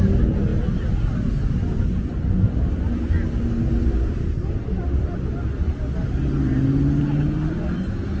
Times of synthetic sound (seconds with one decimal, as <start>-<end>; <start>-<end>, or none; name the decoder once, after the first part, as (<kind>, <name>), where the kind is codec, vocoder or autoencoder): none